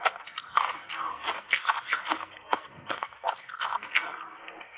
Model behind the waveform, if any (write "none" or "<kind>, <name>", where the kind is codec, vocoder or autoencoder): codec, SNAC